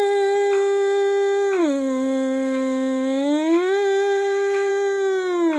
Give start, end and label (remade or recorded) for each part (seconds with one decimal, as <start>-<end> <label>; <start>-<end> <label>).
0.0-1.6 recorded; 1.6-4.7 remade; 4.7-5.6 recorded